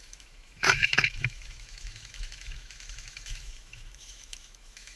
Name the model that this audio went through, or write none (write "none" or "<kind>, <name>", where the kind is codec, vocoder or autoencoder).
autoencoder, DAC-VAE